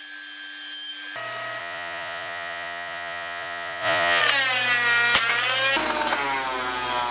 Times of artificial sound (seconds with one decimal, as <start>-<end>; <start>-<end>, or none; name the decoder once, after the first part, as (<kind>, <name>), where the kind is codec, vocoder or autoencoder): 1.6-4.2 (vocoder, Vocos)